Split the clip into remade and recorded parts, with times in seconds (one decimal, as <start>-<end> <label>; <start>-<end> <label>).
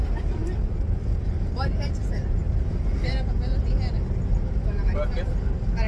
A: 0.0-5.9 recorded